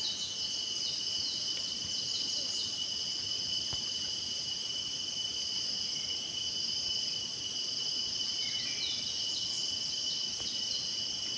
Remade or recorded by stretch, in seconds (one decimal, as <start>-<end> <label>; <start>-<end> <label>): 0.0-7.8 recorded; 7.8-8.5 remade; 8.5-11.4 recorded